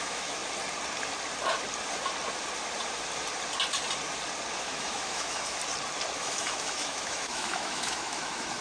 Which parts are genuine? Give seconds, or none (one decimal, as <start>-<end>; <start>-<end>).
0.4-4.6; 5.6-6.2